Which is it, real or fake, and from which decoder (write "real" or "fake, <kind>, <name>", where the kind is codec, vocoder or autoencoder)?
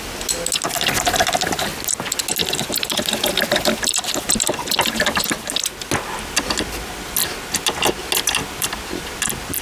real